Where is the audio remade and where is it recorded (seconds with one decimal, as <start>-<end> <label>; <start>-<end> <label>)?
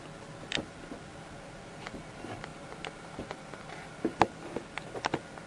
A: 0.0-5.5 recorded